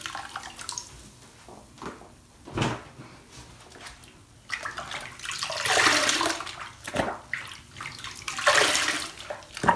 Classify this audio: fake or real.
real